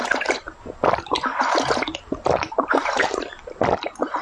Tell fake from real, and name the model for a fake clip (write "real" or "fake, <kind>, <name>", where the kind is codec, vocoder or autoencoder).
real